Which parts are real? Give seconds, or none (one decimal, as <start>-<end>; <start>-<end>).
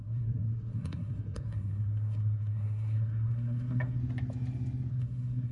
4.0-4.9